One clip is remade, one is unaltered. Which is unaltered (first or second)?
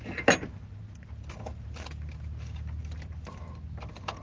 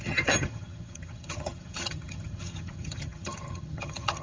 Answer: first